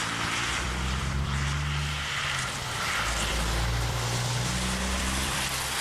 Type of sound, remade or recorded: remade